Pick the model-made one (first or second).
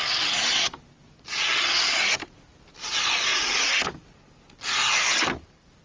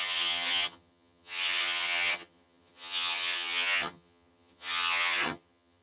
second